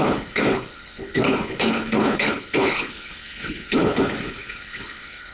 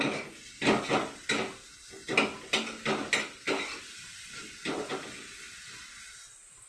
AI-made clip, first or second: first